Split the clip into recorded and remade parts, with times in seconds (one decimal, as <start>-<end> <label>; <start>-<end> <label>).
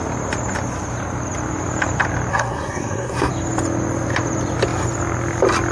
0.0-2.3 recorded; 2.3-3.3 remade; 3.3-5.7 recorded